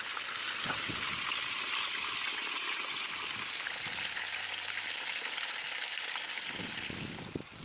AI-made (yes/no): no